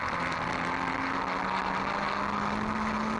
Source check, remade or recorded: recorded